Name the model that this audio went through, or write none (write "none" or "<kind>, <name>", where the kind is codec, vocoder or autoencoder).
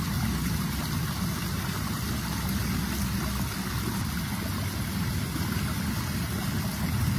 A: none